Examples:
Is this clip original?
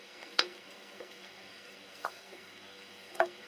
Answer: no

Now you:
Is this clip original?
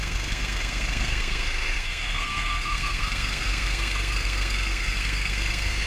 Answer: no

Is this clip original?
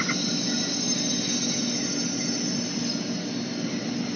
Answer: yes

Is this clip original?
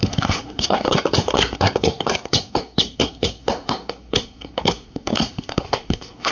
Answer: no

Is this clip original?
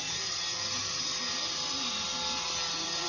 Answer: yes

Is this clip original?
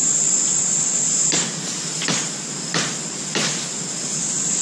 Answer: yes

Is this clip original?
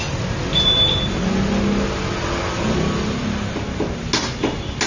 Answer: yes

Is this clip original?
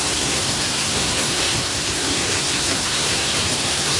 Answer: no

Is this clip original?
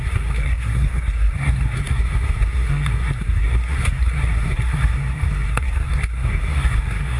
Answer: no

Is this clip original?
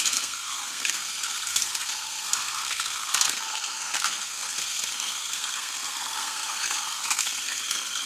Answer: no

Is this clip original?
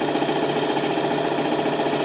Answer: yes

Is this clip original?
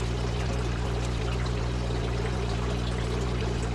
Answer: yes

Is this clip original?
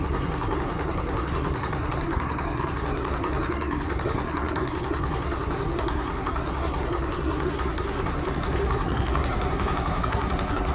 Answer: no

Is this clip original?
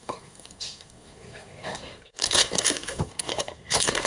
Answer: no